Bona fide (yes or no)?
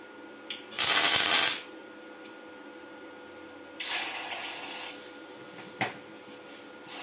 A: yes